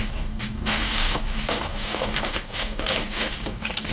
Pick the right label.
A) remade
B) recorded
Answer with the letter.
A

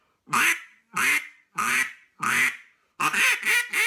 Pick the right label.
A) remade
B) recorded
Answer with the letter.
B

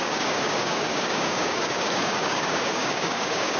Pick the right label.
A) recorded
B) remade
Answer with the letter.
B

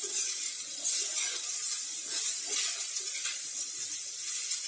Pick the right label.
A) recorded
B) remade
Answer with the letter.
A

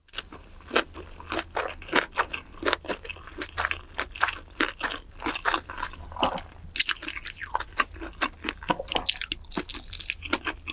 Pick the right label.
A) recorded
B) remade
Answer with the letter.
A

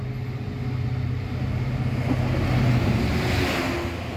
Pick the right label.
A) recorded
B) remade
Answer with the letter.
A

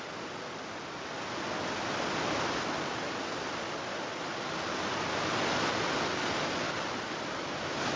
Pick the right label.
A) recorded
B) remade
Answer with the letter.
A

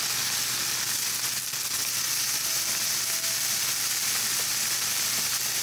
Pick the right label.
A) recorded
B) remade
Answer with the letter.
A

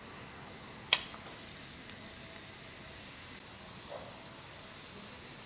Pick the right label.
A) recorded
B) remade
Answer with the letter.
A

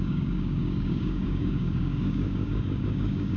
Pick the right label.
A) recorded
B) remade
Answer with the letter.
B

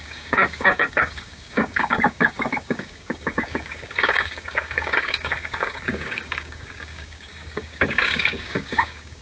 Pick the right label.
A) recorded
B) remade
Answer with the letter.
B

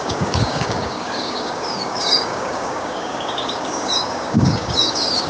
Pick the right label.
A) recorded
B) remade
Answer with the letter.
B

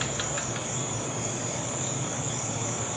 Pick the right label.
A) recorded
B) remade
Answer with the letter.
B